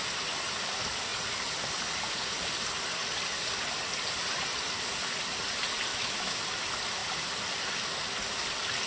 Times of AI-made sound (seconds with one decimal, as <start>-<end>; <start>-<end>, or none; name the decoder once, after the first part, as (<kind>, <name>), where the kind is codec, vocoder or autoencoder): 5.9-6.4 (autoencoder, DAC-VAE)